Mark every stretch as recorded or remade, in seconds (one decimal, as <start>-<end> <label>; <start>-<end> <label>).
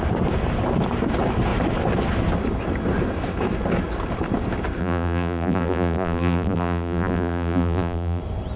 0.0-4.8 recorded; 4.8-8.2 remade; 8.2-8.6 recorded